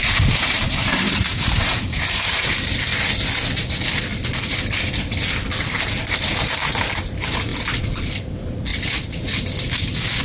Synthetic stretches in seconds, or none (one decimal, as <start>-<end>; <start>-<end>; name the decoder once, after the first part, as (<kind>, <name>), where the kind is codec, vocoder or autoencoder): 0.0-2.9 (vocoder, BigVGAN v2); 5.8-7.5; 8.0-8.7